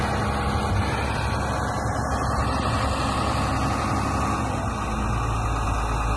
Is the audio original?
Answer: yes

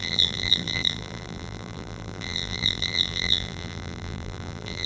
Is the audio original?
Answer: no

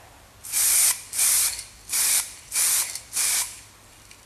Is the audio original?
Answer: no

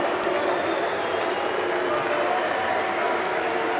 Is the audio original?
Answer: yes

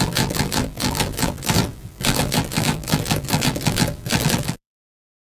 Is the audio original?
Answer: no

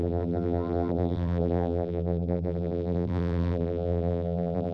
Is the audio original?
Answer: no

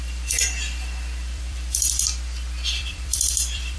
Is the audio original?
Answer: no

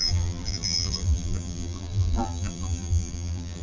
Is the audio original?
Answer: no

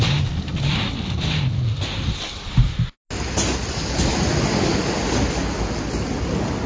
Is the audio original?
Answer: yes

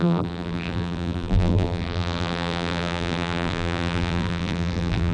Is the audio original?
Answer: no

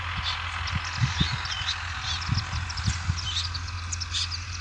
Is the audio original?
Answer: yes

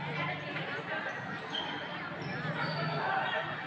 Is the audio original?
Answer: no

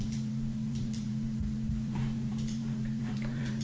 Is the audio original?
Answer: no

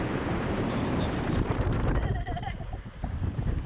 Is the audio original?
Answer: no